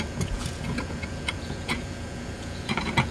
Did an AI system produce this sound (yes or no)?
yes